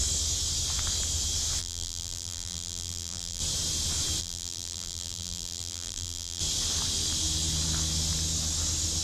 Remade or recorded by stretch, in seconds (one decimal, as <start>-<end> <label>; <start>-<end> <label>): 0.0-1.6 recorded; 1.6-3.4 remade; 3.4-4.2 recorded; 4.2-6.4 remade; 6.4-9.0 recorded